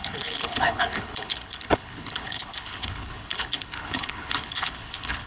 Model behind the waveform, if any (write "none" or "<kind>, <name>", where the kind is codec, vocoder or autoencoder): codec, HILCodec